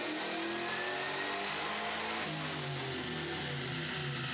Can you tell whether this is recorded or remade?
recorded